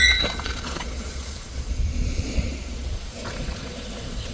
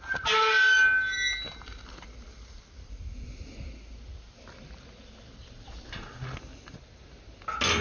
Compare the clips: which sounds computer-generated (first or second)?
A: first